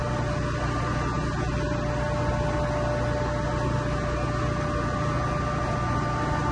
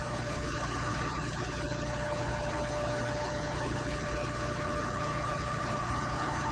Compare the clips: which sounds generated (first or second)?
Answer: second